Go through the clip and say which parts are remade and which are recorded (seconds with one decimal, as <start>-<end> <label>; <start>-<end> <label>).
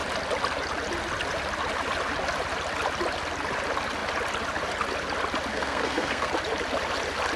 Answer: 0.0-5.5 recorded; 5.5-6.3 remade; 6.3-7.4 recorded